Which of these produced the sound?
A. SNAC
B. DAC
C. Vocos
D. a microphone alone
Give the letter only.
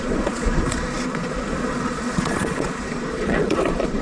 C